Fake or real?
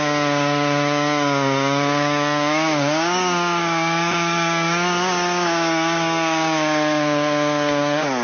fake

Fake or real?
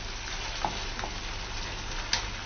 real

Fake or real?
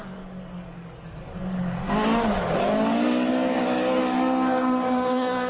fake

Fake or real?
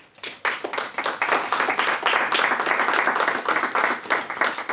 real